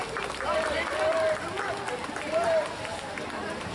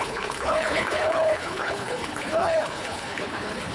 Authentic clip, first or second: first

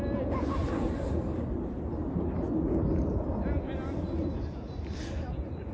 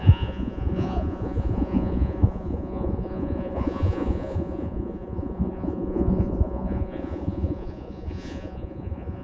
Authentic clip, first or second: first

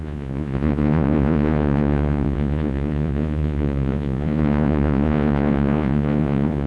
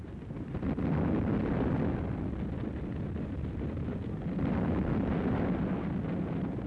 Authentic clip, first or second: second